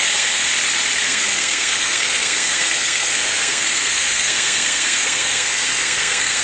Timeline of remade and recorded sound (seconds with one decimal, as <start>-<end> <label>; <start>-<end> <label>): 0.0-0.5 remade; 0.5-1.0 recorded; 1.0-6.4 remade